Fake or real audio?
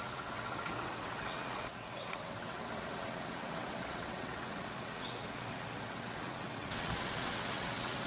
fake